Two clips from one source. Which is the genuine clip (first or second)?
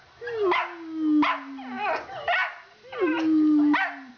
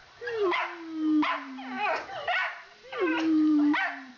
first